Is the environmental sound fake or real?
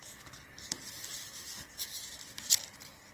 real